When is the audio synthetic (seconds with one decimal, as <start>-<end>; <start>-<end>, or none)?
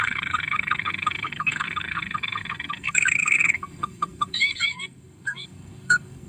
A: 0.0-6.3